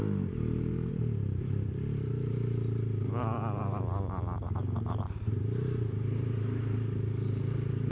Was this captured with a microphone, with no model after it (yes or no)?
no